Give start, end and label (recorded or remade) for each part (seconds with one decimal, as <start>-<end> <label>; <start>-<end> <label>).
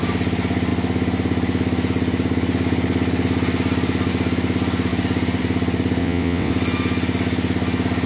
0.0-6.0 recorded; 6.0-6.5 remade; 6.5-8.1 recorded